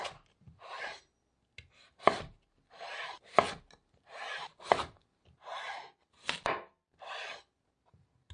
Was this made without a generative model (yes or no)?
yes